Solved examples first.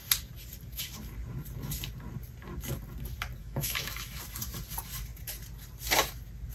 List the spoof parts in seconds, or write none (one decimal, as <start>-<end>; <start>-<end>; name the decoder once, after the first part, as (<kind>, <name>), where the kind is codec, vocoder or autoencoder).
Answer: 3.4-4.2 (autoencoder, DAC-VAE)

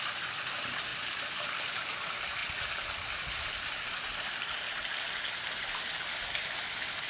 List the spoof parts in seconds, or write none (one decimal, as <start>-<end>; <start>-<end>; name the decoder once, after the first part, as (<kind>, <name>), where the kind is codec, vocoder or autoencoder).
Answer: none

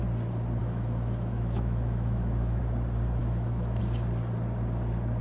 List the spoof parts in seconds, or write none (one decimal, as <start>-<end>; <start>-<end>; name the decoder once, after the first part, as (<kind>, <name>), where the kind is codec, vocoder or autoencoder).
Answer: 0.6-2.6 (autoencoder, DAC-VAE); 3.2-3.8

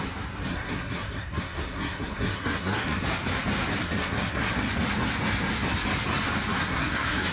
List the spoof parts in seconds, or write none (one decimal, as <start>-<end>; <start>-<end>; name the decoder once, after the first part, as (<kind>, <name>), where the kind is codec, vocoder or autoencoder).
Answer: 0.5-3.0 (codec, SNAC); 3.8-4.7; 6.6-7.3